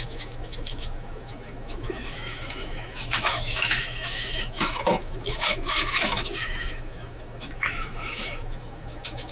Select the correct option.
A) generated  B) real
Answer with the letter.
A